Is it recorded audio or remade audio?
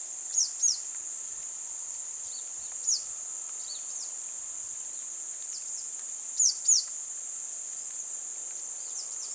recorded